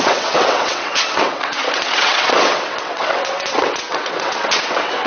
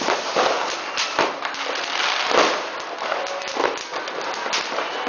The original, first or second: second